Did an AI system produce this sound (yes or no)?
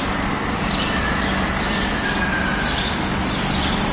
no